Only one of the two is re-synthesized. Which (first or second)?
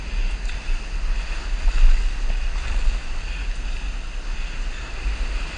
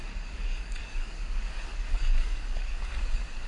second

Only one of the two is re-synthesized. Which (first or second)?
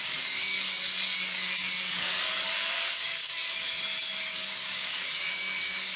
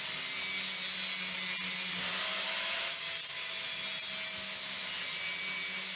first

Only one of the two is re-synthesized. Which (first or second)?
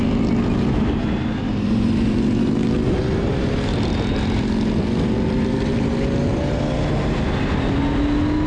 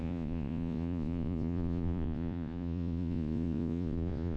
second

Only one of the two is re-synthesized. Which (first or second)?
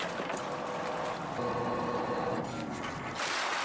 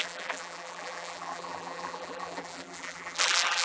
second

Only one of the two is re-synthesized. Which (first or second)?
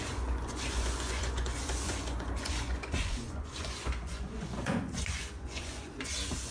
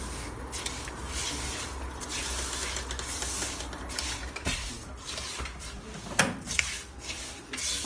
first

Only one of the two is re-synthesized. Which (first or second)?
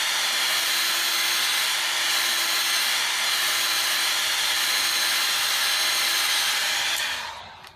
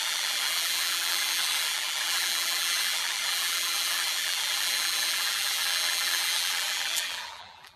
second